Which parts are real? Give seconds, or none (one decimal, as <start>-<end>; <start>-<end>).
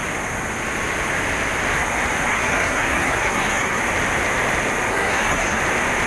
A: 0.0-2.3; 3.8-4.9; 5.6-6.1